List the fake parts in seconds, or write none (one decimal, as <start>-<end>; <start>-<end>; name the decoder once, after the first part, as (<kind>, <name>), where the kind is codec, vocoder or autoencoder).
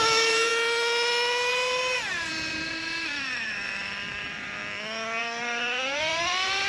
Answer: 0.0-0.5 (vocoder, BigVGAN v2); 1.5-4.6; 5.2-6.7